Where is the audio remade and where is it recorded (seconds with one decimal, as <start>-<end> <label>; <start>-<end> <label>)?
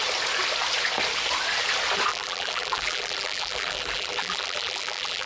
0.0-2.1 recorded; 2.1-5.3 remade